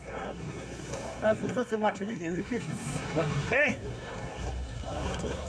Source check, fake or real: fake